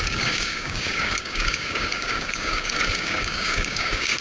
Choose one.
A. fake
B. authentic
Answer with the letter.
A